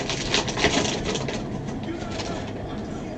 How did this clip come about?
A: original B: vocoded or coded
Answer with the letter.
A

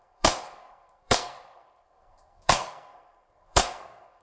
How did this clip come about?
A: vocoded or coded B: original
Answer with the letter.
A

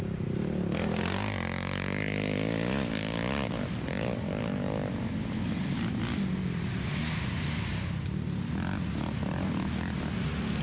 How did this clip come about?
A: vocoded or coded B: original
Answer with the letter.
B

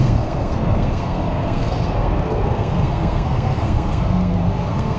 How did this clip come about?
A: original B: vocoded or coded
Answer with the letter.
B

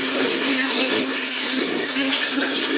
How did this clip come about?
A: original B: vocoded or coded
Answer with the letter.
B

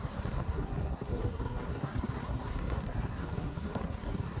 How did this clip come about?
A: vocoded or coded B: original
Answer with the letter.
A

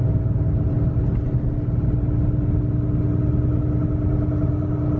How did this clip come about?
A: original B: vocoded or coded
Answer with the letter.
A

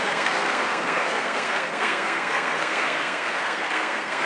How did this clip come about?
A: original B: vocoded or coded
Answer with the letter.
B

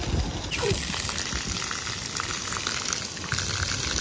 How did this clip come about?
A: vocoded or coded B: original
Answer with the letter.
B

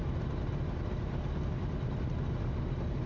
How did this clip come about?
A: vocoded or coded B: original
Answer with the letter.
B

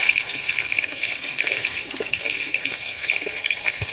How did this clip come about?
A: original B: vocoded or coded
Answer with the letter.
B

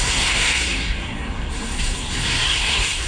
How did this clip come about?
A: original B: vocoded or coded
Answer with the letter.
B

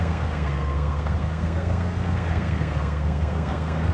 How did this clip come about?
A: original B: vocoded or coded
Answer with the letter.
B